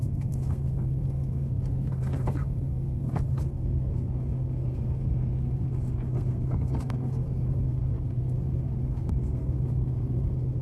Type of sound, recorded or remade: remade